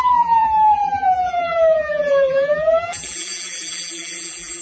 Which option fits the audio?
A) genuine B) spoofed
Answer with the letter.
B